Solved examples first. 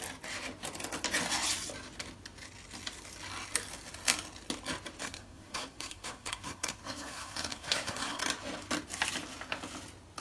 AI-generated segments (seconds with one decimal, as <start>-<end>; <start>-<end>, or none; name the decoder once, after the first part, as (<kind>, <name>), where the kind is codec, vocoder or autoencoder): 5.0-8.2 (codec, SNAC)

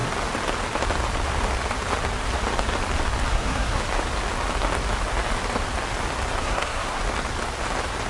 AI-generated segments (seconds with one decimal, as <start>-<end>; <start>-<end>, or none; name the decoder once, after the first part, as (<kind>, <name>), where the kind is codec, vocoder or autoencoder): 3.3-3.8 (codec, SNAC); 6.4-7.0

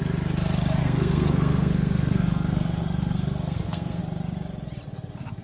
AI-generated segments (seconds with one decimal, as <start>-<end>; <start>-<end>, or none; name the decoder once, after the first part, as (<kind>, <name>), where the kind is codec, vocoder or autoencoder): 0.8-4.0 (codec, SNAC)

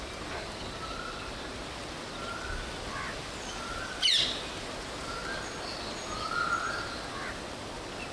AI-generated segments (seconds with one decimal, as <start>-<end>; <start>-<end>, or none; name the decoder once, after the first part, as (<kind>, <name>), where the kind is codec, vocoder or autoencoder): none